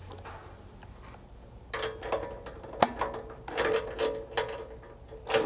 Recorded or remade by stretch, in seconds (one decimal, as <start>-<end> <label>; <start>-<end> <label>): 0.0-5.5 recorded